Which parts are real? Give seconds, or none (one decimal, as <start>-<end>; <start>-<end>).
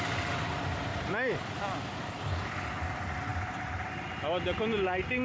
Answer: 0.0-0.9; 1.5-3.3; 4.2-5.2